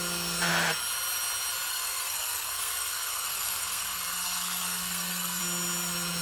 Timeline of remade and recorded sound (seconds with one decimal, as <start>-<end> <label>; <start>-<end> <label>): 0.0-1.7 recorded; 1.7-5.4 remade; 5.4-6.2 recorded